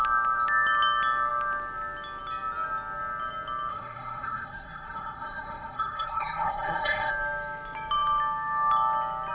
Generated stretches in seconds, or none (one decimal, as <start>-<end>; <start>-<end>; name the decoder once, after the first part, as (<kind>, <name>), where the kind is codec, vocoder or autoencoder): 3.7-7.1 (codec, SNAC)